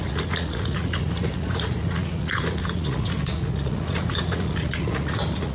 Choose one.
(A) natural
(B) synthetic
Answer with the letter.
B